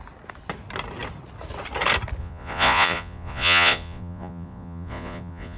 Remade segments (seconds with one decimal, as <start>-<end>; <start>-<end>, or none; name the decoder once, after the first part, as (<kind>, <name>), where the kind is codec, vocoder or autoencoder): 2.2-5.6 (vocoder, Vocos)